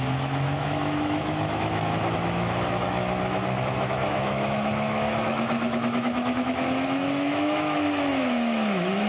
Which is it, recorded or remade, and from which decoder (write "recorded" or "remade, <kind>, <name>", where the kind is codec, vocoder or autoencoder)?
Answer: remade, autoencoder, DAC-VAE